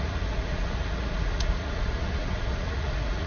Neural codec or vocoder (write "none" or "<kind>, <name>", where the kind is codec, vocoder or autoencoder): vocoder, Vocos